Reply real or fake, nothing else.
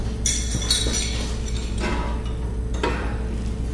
real